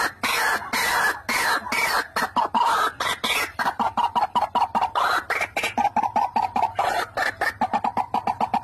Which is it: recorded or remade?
recorded